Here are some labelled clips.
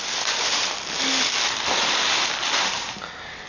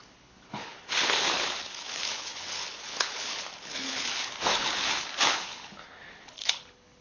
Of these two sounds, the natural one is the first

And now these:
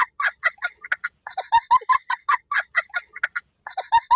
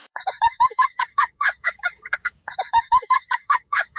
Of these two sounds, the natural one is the first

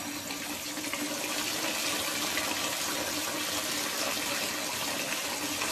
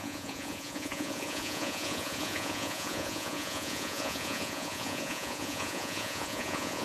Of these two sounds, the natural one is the first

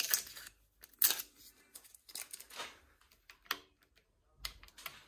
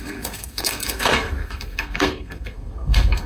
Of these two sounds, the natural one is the first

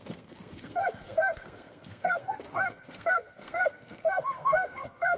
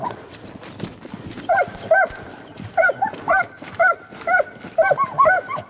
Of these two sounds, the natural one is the second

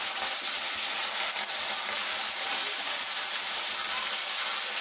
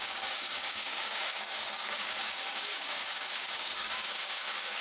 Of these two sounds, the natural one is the first